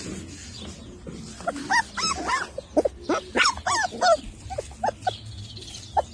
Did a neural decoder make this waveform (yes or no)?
no